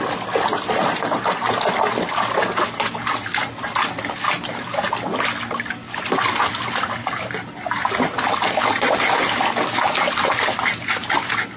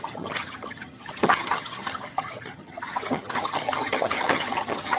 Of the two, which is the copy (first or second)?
second